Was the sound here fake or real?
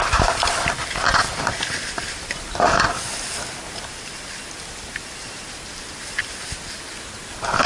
real